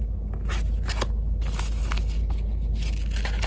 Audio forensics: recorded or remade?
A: recorded